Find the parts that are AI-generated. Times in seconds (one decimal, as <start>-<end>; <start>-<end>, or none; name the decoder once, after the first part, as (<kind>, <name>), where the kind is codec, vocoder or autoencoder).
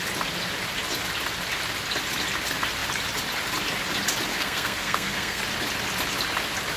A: 4.3-5.4 (codec, SNAC)